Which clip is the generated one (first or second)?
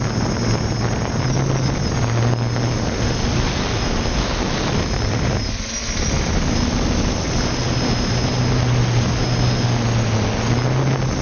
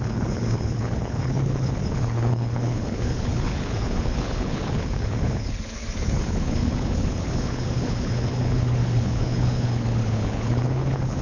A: second